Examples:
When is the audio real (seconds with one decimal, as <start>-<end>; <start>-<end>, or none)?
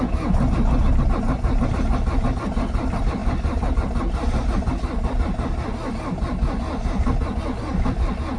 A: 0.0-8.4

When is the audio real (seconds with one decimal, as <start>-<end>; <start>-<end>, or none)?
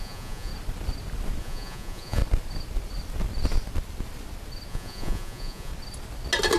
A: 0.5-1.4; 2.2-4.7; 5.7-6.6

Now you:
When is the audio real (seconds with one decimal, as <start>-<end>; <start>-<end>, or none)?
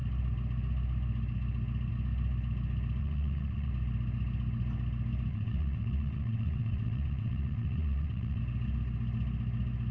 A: 0.0-3.0; 3.7-5.3; 8.4-9.9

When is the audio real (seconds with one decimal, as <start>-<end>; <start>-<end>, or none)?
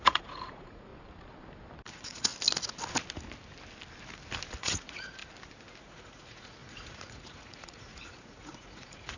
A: 0.9-1.9; 2.3-4.6; 5.2-5.8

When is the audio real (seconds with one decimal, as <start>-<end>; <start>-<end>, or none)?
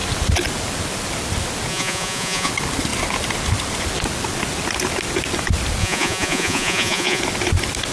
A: 0.0-1.7; 2.5-5.8; 7.2-7.9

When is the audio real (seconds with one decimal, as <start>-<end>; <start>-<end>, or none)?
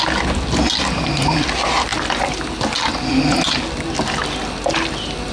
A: 0.0-5.3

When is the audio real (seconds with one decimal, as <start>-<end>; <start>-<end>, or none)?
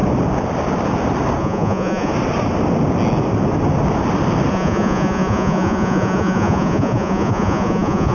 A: 0.0-1.4; 2.1-4.5